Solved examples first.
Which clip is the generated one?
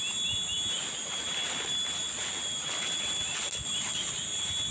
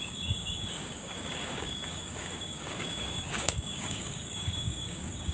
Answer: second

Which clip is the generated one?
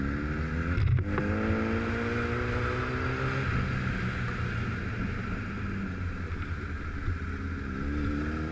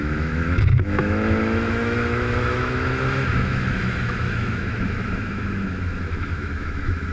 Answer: second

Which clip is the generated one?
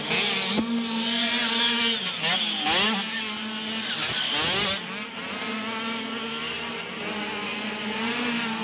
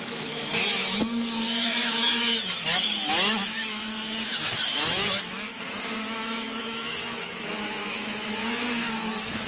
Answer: second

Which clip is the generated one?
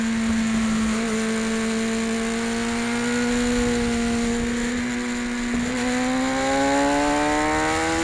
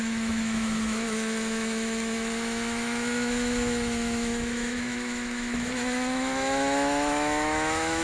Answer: second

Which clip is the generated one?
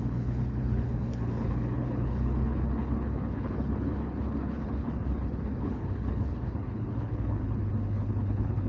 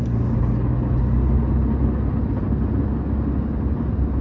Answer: first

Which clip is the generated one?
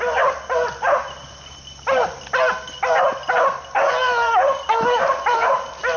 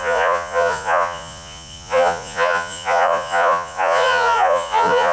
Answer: second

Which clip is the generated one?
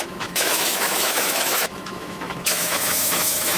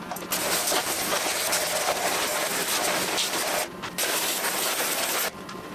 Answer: first